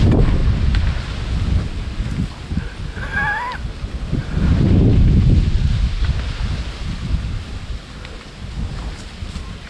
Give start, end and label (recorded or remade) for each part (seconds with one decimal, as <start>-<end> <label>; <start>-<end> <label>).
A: 0.0-9.7 recorded